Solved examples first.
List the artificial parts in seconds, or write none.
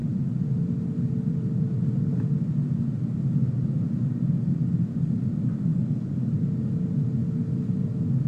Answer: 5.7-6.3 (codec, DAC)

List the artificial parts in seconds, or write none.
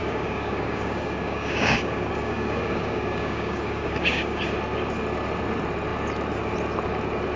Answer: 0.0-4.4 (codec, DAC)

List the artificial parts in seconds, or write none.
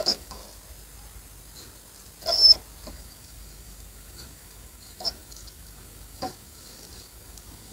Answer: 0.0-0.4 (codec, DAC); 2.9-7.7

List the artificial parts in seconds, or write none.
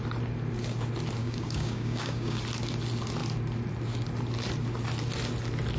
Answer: 1.2-2.4 (codec, DAC)